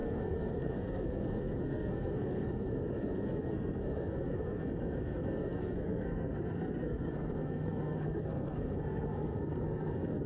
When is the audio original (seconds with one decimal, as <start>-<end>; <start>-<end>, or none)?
none

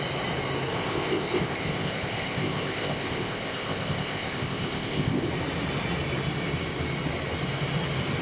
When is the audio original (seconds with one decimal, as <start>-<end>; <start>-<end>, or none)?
0.0-0.7; 5.3-8.2

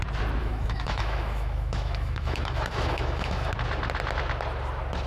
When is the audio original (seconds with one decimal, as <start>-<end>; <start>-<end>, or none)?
0.0-0.4; 3.5-5.1

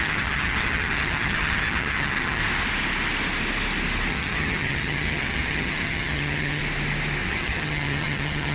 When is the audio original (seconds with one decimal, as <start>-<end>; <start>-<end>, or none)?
2.4-4.1; 6.6-7.3

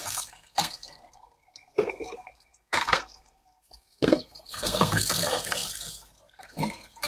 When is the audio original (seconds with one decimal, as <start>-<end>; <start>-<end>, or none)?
none

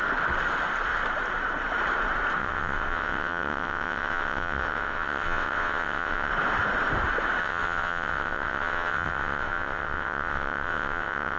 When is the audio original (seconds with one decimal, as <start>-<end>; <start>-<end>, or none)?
0.0-2.4; 6.3-7.4

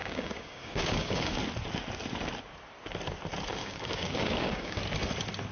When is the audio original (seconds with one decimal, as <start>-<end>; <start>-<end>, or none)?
1.4-3.6; 4.8-5.5

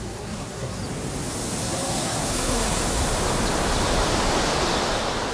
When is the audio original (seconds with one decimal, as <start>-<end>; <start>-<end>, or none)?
0.8-1.6; 2.8-5.3